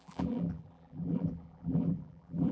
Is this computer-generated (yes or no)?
yes